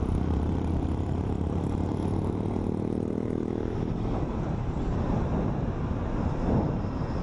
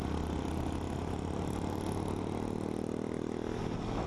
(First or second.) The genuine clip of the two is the second